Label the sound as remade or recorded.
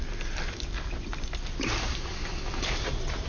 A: remade